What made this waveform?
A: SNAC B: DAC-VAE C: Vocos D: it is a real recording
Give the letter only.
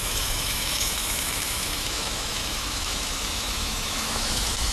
B